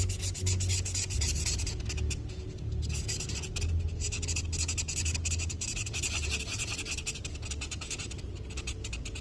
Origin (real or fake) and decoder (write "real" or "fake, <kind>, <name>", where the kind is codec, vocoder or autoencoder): real